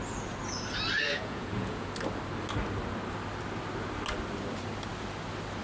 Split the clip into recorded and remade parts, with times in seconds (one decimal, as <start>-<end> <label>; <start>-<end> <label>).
0.0-1.1 recorded; 1.1-1.9 remade; 1.9-5.6 recorded

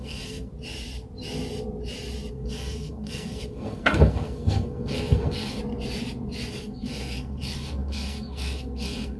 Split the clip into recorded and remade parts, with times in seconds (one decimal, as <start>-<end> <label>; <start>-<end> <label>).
0.0-0.5 remade; 0.5-2.3 recorded; 2.3-5.6 remade; 5.6-6.5 recorded; 6.5-9.2 remade